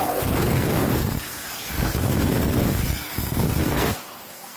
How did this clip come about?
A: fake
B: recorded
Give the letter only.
A